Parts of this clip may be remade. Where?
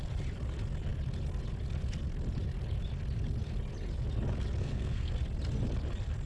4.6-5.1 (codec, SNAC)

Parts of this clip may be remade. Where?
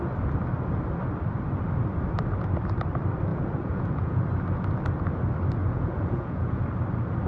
3.3-4.2 (vocoder, Vocos); 5.6-6.6